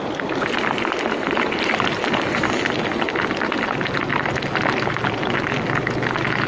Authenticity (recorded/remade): recorded